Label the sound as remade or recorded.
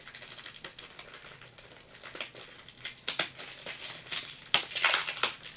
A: recorded